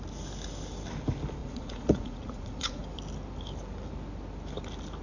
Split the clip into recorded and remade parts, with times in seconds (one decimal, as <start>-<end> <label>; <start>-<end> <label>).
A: 0.0-1.4 recorded; 1.4-2.8 remade; 2.8-5.0 recorded